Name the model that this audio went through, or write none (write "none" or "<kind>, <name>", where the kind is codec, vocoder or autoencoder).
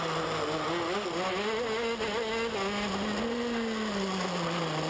none